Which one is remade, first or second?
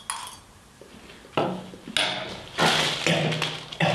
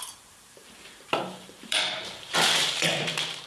second